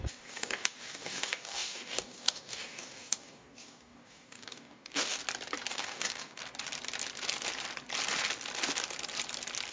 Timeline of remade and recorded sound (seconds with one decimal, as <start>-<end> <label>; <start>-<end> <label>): 0.0-5.2 remade; 5.2-5.7 recorded; 5.7-6.4 remade; 6.4-9.7 recorded